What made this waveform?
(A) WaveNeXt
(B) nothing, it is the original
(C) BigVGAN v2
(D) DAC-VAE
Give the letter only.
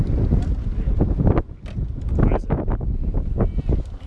B